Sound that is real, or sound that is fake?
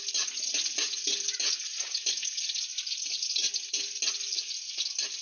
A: real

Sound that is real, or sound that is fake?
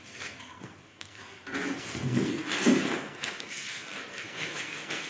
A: fake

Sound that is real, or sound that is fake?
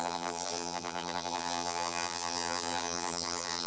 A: fake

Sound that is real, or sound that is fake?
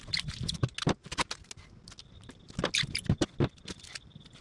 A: real